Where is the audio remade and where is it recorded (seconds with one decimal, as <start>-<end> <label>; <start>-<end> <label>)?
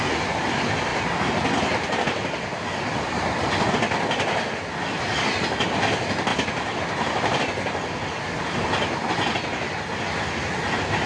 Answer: 0.0-11.1 recorded